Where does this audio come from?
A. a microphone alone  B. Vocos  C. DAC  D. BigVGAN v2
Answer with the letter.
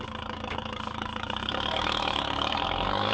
C